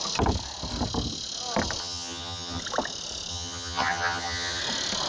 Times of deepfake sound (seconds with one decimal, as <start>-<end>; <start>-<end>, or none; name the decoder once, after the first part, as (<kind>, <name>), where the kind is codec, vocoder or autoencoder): 1.8-2.6 (vocoder, HiFi-GAN); 3.3-4.6